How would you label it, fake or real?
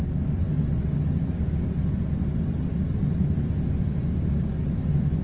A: real